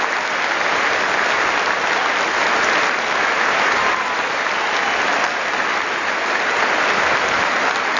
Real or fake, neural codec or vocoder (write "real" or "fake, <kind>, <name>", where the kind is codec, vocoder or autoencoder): real